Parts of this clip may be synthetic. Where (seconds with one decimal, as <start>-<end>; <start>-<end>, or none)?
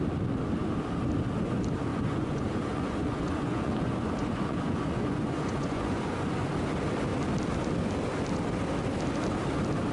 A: 1.9-6.5